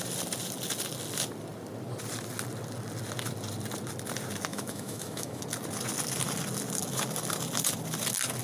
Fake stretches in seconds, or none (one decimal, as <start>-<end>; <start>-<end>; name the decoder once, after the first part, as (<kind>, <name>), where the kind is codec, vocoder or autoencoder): 4.5-5.4 (autoencoder, DAC-VAE)